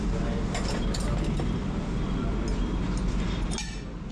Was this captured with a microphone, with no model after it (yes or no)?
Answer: yes